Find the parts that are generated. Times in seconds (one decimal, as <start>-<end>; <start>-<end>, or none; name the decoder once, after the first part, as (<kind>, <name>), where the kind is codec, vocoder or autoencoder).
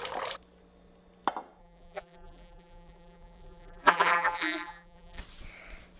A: 1.6-5.2 (vocoder, BigVGAN v2)